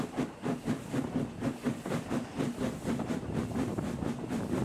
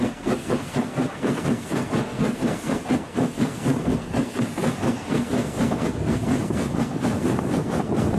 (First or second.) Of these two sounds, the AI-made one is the second